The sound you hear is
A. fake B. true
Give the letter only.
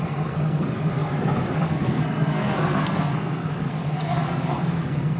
A